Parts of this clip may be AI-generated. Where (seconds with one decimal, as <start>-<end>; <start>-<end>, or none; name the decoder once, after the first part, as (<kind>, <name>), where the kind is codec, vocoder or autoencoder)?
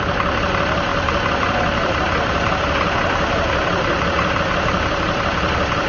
none